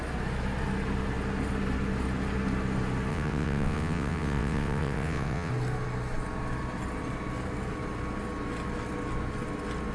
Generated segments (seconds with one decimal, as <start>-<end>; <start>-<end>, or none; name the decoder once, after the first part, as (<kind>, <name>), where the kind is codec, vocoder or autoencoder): 3.1-5.5 (vocoder, WaveNeXt)